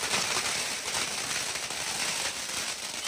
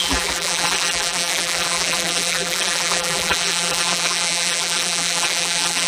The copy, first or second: second